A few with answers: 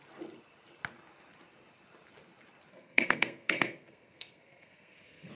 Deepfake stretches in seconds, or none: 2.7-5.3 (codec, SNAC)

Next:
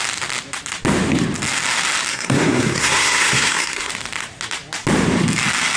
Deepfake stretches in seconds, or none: 2.1-3.9 (codec, SNAC)

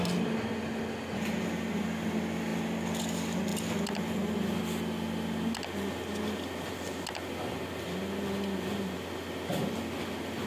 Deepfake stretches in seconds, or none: none

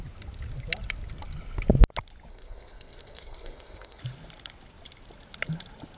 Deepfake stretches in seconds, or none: 2.3-4.0 (codec, SNAC)